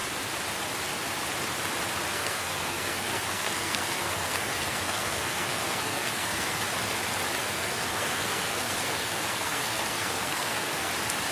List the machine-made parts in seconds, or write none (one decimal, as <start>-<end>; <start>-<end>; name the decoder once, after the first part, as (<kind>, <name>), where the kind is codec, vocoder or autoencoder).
2.1-6.6 (codec, SNAC); 7.4-10.9